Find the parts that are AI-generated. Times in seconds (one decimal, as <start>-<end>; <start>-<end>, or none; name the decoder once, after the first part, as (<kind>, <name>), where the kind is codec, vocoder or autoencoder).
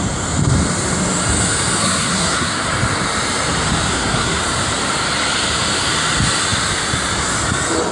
1.8-2.7 (codec, SNAC); 3.9-4.4